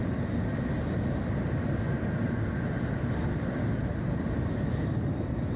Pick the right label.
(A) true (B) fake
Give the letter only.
A